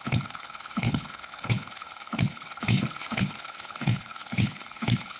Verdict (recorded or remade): remade